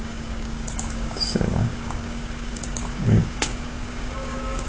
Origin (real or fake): fake